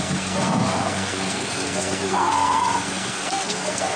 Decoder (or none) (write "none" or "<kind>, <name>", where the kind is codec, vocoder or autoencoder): codec, SNAC